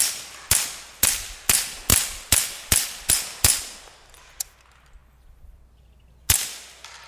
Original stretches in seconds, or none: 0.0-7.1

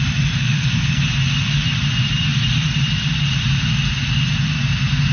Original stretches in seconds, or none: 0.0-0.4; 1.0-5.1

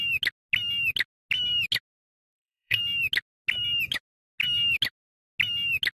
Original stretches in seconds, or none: 0.0-2.2; 2.8-6.0

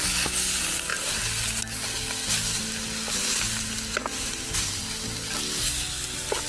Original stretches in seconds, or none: 0.0-6.5